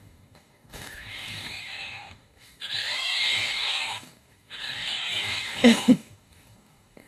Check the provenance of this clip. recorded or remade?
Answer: remade